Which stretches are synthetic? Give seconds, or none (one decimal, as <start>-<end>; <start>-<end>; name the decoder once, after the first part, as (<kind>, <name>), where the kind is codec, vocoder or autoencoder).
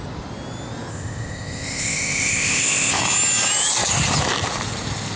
0.9-3.0 (codec, ZipCodec)